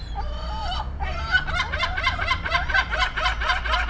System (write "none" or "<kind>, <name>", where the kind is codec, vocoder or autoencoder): none